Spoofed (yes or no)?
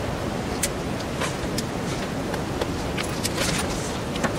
no